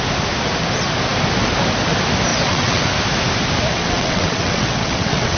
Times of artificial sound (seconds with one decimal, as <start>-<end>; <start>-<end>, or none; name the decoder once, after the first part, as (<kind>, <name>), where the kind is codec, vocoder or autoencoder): 2.3-2.8 (vocoder, WaveNeXt); 3.7-5.4